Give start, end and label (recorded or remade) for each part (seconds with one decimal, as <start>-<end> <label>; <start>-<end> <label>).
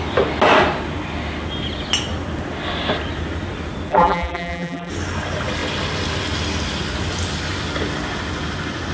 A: 0.0-3.9 recorded; 3.9-4.9 remade; 4.9-8.9 recorded